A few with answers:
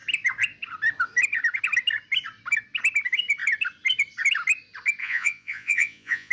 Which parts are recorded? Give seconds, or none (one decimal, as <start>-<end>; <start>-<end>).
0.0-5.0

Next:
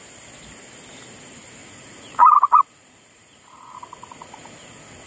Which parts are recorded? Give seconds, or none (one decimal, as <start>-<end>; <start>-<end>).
0.0-1.6

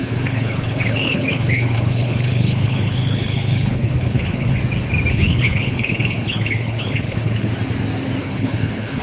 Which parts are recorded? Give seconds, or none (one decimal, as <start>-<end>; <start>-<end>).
4.6-5.1; 7.5-8.2